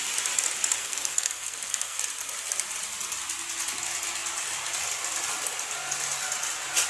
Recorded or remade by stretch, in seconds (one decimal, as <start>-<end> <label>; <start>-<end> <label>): 0.0-0.8 recorded; 0.8-2.0 remade; 2.0-6.9 recorded